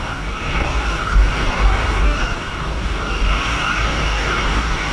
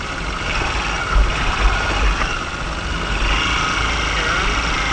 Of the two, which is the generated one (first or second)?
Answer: first